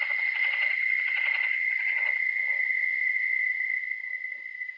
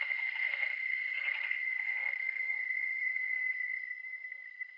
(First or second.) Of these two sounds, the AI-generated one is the second